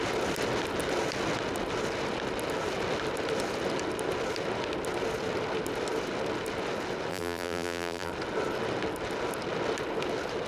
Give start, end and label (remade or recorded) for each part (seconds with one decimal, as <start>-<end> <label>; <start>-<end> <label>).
0.0-7.1 recorded; 7.1-8.1 remade; 8.1-10.5 recorded